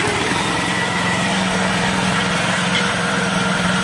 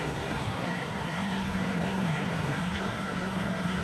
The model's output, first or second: second